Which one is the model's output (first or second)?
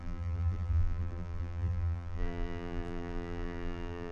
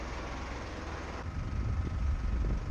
first